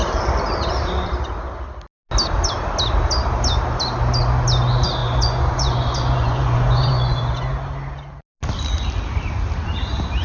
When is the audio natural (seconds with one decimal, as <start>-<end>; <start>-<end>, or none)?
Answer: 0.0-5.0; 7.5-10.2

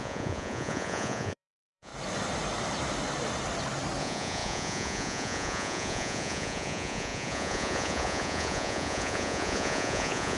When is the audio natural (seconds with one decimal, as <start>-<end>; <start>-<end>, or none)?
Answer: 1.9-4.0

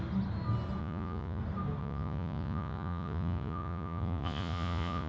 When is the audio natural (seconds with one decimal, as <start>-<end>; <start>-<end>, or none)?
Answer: 0.0-0.8; 1.4-1.8